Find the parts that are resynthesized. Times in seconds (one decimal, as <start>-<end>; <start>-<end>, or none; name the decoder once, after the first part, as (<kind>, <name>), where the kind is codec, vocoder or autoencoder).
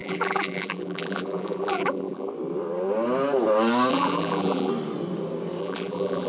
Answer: 0.0-2.3 (vocoder, BigVGAN v2); 3.9-4.7; 5.6-6.3